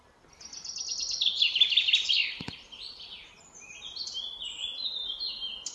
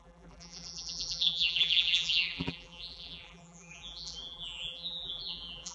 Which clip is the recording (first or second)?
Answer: first